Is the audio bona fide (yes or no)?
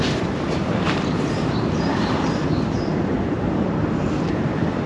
no